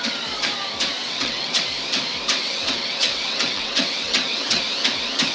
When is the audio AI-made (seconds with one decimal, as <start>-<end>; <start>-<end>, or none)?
1.0-1.6; 2.4-4.6